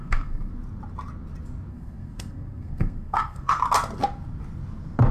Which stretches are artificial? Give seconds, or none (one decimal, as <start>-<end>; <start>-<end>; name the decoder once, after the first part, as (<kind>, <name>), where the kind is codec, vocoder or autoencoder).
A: 0.0-0.5 (codec, SNAC); 1.7-3.6